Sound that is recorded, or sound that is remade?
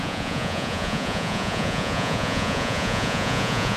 remade